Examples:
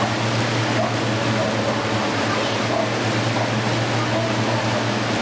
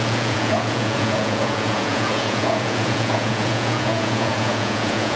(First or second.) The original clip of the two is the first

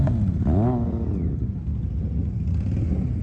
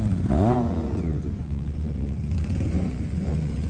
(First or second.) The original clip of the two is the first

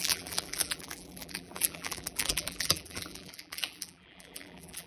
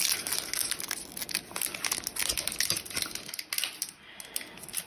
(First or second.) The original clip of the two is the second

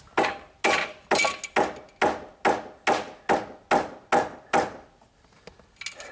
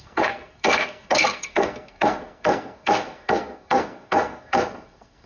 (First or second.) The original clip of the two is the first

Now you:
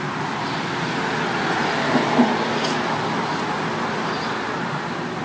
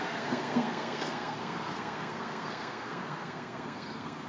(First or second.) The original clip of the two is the first